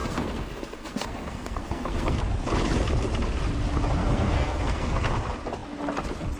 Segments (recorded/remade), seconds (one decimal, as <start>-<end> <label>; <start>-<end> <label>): 0.0-2.2 remade; 2.2-4.0 recorded; 4.0-5.1 remade; 5.1-6.4 recorded